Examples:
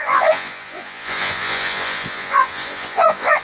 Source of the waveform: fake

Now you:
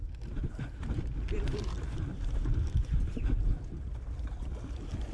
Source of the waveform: real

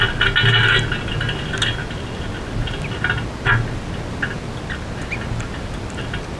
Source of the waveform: real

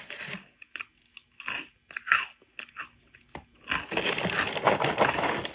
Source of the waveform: real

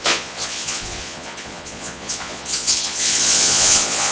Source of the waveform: fake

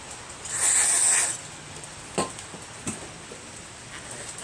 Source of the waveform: real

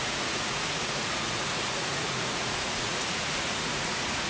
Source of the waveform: fake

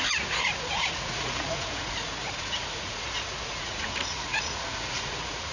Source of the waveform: fake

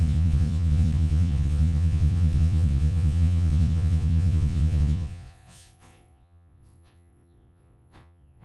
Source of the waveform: fake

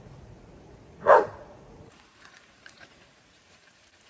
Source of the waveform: fake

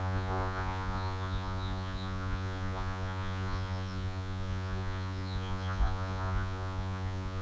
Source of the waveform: fake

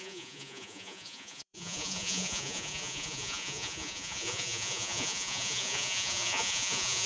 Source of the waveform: fake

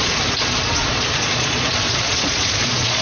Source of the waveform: fake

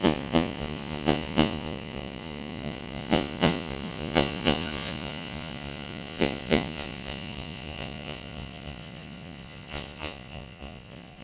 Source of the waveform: fake